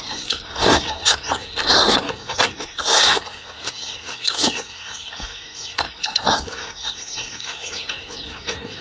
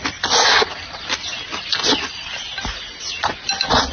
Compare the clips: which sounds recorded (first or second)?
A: second